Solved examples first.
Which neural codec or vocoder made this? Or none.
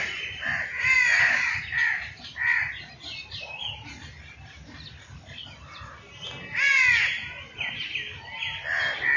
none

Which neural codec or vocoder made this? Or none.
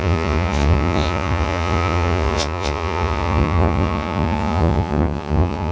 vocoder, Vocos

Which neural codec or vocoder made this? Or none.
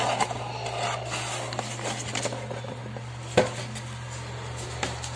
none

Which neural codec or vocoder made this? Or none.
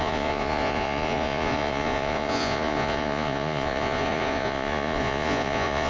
vocoder, Vocos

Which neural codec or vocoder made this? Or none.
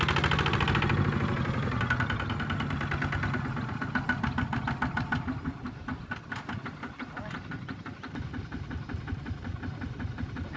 none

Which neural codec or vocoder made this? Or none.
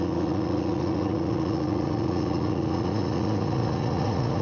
vocoder, Vocos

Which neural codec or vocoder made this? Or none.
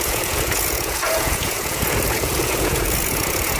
vocoder, Vocos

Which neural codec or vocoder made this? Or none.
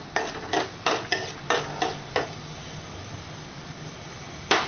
none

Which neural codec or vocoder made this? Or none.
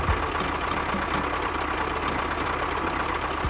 none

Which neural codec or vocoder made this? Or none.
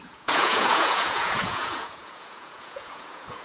vocoder, Vocos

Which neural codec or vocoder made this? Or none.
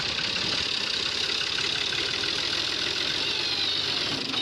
none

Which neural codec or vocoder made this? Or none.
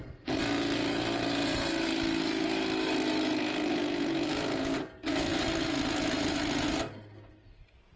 none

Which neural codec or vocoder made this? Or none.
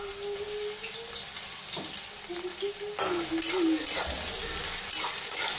none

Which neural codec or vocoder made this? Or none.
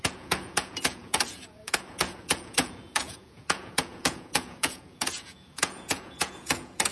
vocoder, Vocos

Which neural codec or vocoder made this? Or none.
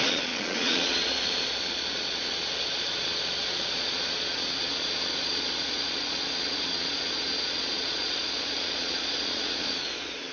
vocoder, Vocos